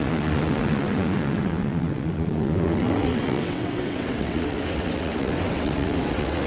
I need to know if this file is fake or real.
fake